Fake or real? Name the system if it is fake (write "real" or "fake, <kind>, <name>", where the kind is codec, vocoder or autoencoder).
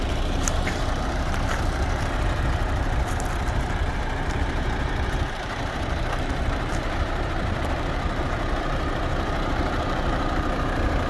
fake, vocoder, BigVGAN v2